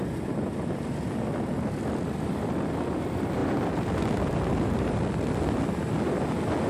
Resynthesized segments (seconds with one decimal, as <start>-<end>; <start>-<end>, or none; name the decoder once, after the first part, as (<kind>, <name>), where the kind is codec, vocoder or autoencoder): none